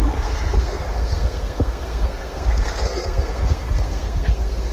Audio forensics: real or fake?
fake